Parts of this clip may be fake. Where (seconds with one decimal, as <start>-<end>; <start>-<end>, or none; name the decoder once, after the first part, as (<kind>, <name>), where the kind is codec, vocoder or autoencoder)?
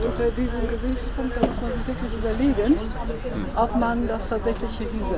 none